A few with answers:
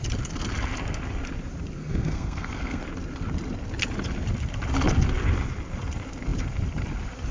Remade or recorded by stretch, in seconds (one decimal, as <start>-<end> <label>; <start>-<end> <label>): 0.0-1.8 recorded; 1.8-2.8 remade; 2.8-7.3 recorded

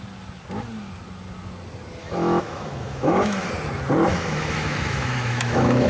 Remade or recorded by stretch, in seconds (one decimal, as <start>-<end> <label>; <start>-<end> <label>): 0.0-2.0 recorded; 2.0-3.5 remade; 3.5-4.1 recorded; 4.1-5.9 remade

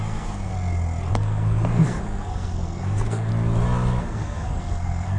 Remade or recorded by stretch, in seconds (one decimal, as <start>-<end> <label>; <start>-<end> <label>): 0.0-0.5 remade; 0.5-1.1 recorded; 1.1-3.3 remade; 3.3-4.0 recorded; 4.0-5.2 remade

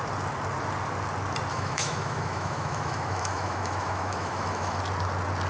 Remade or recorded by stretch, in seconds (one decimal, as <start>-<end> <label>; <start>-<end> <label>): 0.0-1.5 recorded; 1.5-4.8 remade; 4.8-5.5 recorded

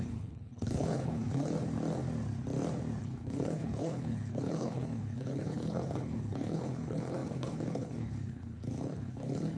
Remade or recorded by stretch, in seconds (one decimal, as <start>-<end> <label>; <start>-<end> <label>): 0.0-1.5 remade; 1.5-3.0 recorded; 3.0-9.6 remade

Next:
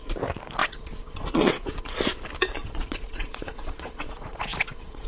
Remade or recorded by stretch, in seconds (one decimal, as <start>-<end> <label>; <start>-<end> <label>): 0.0-0.6 recorded; 0.6-1.8 remade; 1.8-2.6 recorded; 2.6-5.1 remade

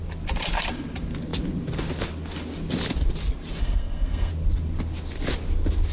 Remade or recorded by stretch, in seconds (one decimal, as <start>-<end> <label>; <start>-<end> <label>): 0.0-3.6 recorded; 3.6-4.3 remade; 4.3-5.9 recorded